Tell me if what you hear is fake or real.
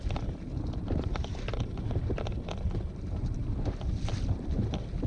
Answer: real